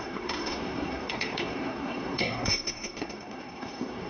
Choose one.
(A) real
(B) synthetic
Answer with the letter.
B